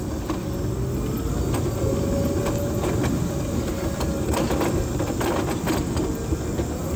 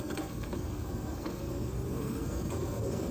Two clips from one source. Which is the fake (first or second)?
second